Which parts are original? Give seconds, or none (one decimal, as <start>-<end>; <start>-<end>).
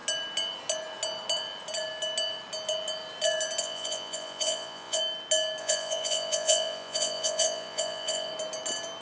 0.0-3.6; 5.0-5.6; 8.3-9.0